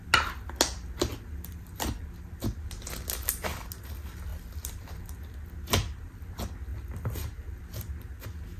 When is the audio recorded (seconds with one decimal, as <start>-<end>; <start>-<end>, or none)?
0.0-1.1; 2.0-4.3; 5.0-6.7; 7.6-8.6